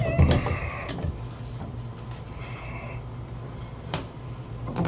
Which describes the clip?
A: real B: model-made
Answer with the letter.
A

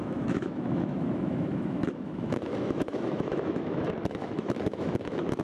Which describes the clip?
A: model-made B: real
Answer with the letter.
A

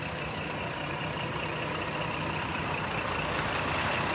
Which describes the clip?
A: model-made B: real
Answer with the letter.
B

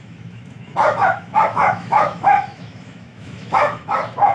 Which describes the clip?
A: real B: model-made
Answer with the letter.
B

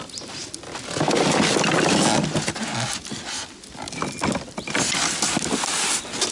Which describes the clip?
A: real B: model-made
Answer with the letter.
A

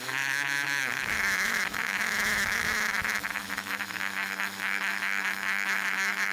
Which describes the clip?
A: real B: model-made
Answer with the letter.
B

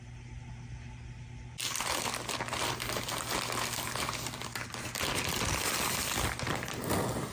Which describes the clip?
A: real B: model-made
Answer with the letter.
A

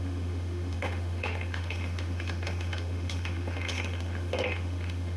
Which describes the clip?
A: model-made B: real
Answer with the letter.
A